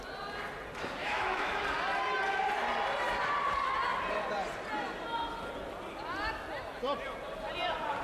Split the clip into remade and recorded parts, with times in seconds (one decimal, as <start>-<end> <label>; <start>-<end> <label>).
0.0-1.0 recorded; 1.0-1.6 remade; 1.6-8.0 recorded